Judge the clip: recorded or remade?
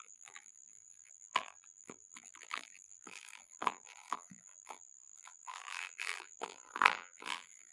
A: remade